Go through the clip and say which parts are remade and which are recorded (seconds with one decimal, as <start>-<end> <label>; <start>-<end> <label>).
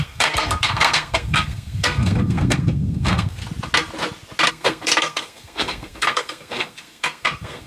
0.0-3.4 remade; 3.4-4.5 recorded; 4.5-7.7 remade